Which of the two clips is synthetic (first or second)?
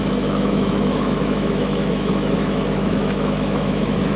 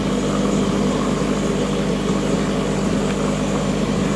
first